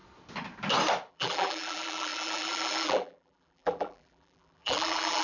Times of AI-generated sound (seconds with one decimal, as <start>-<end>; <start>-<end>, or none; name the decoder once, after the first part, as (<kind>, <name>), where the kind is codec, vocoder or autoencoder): 1.1-5.2 (vocoder, BigVGAN v2)